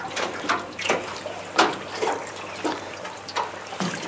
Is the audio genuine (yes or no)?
yes